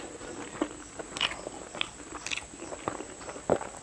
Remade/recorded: recorded